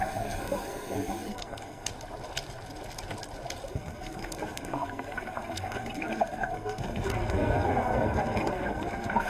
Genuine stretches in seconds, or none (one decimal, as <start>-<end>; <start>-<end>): 1.9-3.7